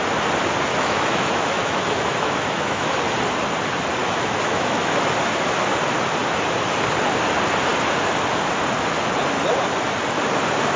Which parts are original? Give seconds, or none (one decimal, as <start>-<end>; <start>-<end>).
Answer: 0.0-0.7; 3.0-4.0; 5.1-10.8